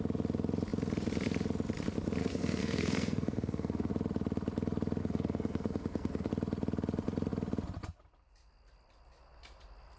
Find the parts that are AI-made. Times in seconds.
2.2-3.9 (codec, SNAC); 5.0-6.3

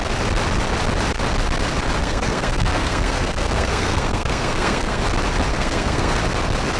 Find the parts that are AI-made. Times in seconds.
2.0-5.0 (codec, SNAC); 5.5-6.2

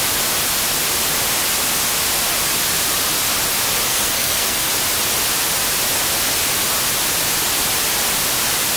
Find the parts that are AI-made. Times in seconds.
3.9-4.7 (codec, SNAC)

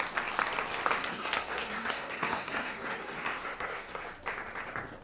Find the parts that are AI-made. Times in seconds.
1.0-4.0 (codec, SNAC)

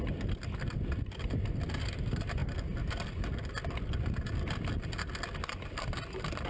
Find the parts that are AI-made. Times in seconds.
none

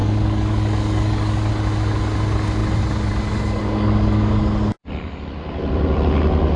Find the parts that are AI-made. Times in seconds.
0.0-1.5 (codec, DAC); 3.6-4.3